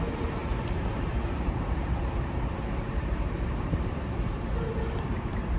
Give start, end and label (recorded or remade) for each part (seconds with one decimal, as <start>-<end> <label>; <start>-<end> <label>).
0.0-5.6 remade